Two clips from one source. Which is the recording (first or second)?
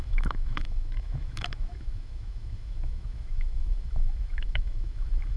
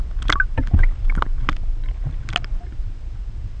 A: second